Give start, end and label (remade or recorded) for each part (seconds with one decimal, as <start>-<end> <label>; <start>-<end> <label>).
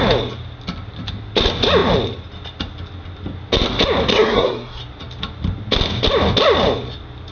0.0-4.1 recorded; 4.1-4.8 remade; 4.8-7.3 recorded